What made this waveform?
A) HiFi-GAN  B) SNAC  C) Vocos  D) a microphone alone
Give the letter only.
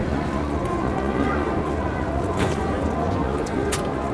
C